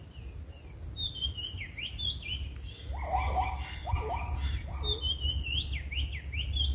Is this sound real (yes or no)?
yes